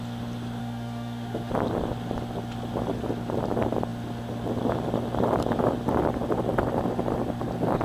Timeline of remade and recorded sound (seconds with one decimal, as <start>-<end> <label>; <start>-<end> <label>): 0.0-0.6 recorded; 0.6-1.5 remade; 1.5-7.8 recorded